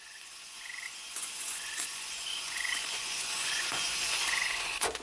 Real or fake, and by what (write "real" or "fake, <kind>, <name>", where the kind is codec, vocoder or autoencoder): fake, vocoder, Vocos